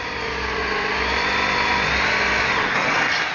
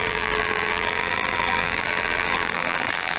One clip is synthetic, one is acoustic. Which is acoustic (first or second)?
first